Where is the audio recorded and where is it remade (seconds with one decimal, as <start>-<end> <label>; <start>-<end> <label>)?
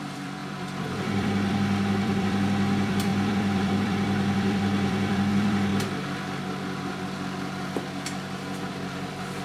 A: 0.0-5.7 remade; 5.7-8.6 recorded; 8.6-9.4 remade